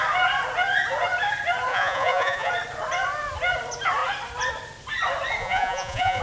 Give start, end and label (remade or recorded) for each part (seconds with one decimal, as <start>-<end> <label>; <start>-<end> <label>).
0.0-1.7 recorded; 1.7-2.5 remade; 2.5-5.4 recorded; 5.4-6.2 remade